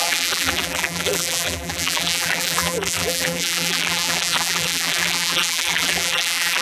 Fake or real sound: fake